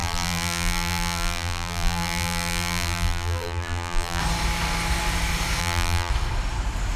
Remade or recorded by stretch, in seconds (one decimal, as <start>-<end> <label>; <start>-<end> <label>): 0.0-4.2 remade; 4.2-5.6 recorded; 5.6-6.1 remade; 6.1-7.0 recorded